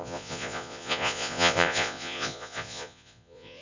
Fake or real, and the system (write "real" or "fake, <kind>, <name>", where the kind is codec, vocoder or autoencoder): fake, vocoder, Vocos